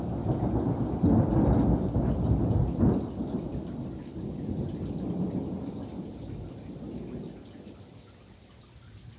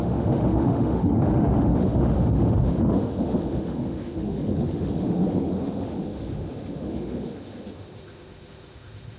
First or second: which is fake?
second